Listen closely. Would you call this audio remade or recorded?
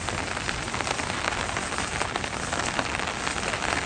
recorded